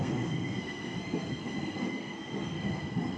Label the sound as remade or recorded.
remade